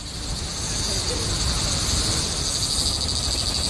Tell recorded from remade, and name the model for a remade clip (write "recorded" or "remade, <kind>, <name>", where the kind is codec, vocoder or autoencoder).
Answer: recorded